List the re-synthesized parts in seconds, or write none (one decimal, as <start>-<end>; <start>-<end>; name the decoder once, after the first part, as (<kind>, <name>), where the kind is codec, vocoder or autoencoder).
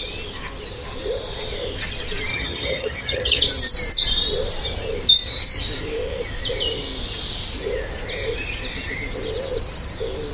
2.3-3.4 (vocoder, HiFi-GAN)